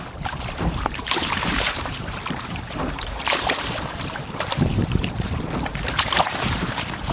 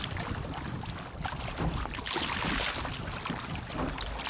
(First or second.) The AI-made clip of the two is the first